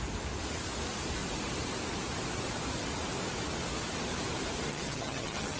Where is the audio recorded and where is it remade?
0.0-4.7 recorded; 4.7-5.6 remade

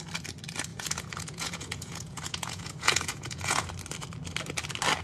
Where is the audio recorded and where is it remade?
0.0-0.7 recorded; 0.7-3.7 remade; 3.7-5.0 recorded

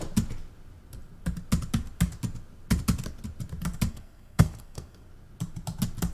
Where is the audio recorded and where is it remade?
0.0-3.9 recorded; 3.9-5.1 remade; 5.1-6.1 recorded

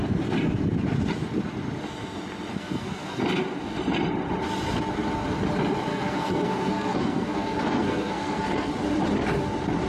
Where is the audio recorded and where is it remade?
0.0-2.5 recorded; 2.5-3.2 remade; 3.2-5.9 recorded; 5.9-8.7 remade; 8.7-9.9 recorded